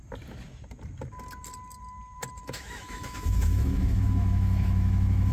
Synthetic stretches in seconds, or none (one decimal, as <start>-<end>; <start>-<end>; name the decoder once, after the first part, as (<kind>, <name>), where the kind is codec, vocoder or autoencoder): 2.4-5.3 (autoencoder, DAC-VAE)